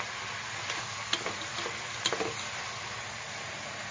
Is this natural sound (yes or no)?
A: yes